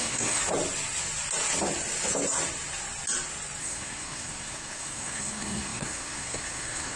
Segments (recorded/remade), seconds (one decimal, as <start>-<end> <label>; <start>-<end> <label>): 0.0-0.4 remade; 0.4-3.6 recorded; 3.6-7.0 remade